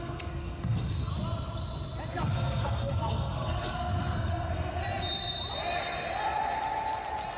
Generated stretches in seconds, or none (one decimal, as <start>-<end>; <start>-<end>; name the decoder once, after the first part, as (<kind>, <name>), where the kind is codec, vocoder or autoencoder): 0.0-1.1 (codec, SNAC); 2.2-4.8